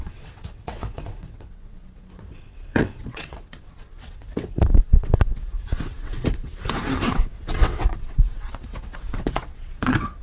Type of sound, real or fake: fake